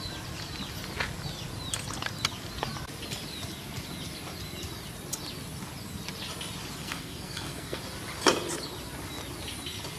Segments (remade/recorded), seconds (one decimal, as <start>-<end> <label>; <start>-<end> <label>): 0.0-6.8 recorded; 6.8-7.8 remade; 7.8-10.0 recorded